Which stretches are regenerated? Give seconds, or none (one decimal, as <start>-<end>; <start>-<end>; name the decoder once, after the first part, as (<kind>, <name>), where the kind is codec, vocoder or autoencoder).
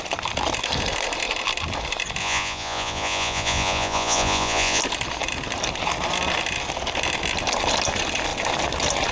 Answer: 2.2-4.8 (vocoder, Vocos)